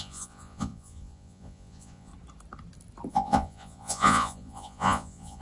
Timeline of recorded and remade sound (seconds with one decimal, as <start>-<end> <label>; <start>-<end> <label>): 0.0-2.1 remade; 2.1-3.1 recorded; 3.1-5.4 remade